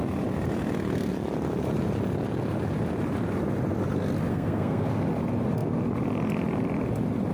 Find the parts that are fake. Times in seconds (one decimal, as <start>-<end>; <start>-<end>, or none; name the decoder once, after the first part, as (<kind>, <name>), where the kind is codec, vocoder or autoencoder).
4.3-4.9 (codec, SNAC)

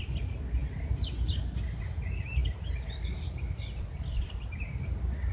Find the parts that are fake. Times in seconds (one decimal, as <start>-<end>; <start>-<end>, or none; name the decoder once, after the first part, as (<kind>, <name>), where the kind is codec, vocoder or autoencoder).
none

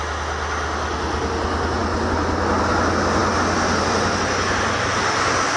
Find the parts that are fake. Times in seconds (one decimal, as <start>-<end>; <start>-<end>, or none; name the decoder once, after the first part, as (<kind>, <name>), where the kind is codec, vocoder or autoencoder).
none

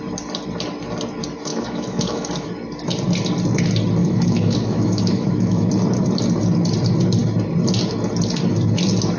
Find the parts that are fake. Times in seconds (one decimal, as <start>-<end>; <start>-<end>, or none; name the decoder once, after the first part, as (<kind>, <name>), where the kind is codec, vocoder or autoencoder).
1.5-2.5 (autoencoder, DAC-VAE); 4.0-5.7

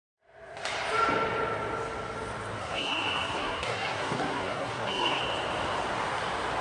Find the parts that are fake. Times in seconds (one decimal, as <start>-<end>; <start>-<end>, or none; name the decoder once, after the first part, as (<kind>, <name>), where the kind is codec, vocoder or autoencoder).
2.6-5.2 (codec, SNAC)